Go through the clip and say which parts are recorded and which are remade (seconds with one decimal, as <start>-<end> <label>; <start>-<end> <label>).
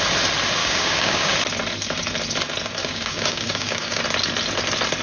0.0-0.6 recorded; 0.6-1.3 remade; 1.3-2.8 recorded; 2.8-4.0 remade; 4.0-5.0 recorded